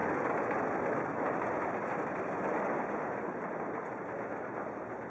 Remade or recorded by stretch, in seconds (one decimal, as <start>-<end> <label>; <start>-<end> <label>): 0.0-5.1 recorded